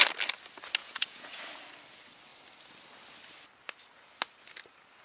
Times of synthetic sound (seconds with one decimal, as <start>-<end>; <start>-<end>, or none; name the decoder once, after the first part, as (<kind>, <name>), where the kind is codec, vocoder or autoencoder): 0.8-1.4 (vocoder, Vocos)